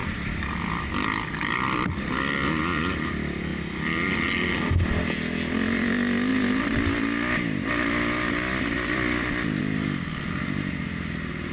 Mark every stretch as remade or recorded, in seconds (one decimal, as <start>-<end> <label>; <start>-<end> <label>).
0.0-2.0 remade; 2.0-6.3 recorded; 6.3-9.6 remade; 9.6-11.5 recorded